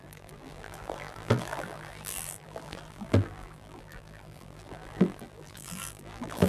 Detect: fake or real fake